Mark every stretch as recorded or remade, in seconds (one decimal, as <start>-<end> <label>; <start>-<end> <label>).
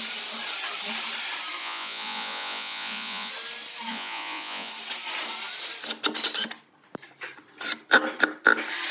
0.0-1.6 recorded; 1.6-3.3 remade; 3.3-3.9 recorded; 3.9-4.7 remade; 4.7-8.9 recorded